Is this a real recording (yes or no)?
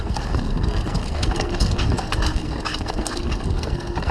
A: no